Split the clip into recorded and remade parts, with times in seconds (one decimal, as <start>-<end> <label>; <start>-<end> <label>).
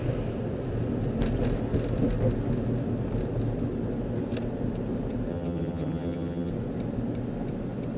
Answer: 0.0-5.3 recorded; 5.3-6.5 remade; 6.5-8.0 recorded